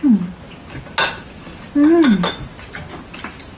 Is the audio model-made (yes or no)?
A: no